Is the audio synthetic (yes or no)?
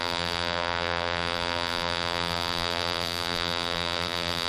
yes